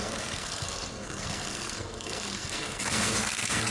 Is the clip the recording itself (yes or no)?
no